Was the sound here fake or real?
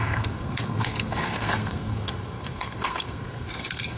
fake